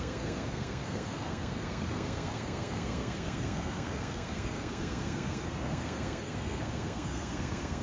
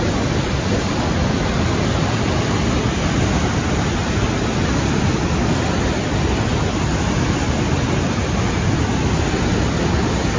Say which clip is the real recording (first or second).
second